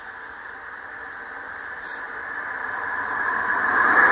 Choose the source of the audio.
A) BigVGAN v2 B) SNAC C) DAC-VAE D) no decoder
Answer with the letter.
A